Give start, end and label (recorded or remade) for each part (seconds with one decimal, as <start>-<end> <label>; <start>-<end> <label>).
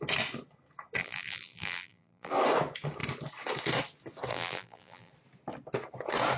0.0-1.0 recorded; 1.0-2.3 remade; 2.3-4.3 recorded; 4.3-5.1 remade; 5.1-6.4 recorded